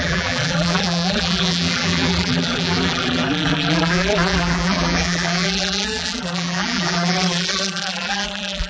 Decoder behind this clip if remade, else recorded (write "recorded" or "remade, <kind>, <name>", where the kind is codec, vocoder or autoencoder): remade, vocoder, BigVGAN v2